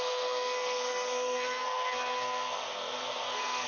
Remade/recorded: remade